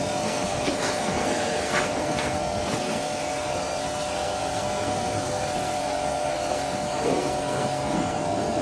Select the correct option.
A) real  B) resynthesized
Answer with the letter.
B